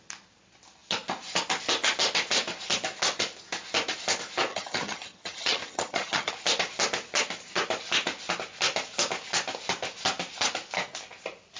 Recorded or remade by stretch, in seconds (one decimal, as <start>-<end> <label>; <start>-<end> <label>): 0.0-4.5 recorded; 4.5-6.3 remade; 6.3-11.6 recorded